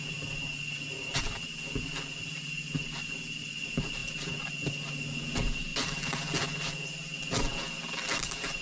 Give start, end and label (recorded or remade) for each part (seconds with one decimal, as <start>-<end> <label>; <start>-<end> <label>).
0.0-8.6 recorded